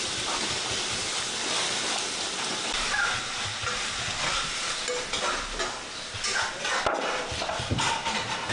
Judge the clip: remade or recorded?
recorded